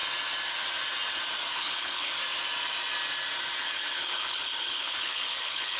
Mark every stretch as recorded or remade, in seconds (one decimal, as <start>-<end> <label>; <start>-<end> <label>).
0.0-1.5 recorded; 1.5-2.1 remade; 2.1-3.6 recorded; 3.6-5.8 remade